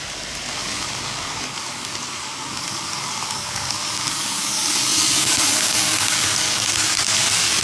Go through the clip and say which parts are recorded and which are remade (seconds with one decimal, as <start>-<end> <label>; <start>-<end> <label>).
0.0-7.6 remade